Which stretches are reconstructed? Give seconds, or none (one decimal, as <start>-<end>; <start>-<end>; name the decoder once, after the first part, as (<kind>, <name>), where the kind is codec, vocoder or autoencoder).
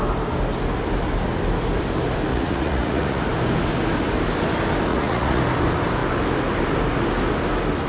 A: 2.3-3.2 (vocoder, Vocos); 4.9-5.4